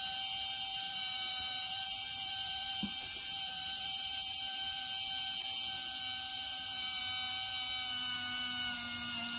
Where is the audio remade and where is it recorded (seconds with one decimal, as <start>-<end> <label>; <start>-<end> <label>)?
0.0-0.7 recorded; 0.7-4.8 remade; 4.8-6.3 recorded; 6.3-7.0 remade; 7.0-9.4 recorded